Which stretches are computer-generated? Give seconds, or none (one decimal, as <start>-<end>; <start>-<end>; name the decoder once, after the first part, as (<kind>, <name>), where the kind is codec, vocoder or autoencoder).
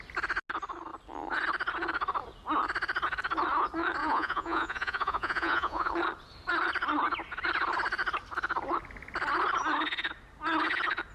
4.0-5.9 (vocoder, Vocos)